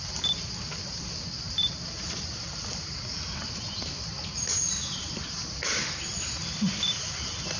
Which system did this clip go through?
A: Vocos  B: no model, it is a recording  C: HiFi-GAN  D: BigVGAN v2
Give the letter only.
B